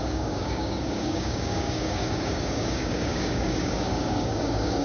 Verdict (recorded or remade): remade